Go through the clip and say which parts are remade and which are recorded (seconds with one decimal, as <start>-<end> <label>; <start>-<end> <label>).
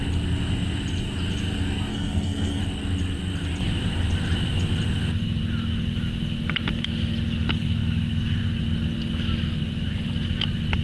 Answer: 0.0-1.9 recorded; 1.9-2.6 remade; 2.6-10.8 recorded